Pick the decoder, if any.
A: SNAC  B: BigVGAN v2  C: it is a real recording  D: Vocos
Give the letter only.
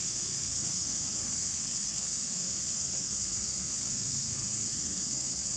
A